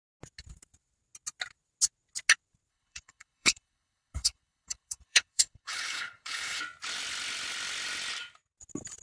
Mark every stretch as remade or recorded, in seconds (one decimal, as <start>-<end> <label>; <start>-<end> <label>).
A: 0.0-2.7 recorded; 2.7-6.6 remade; 6.6-9.0 recorded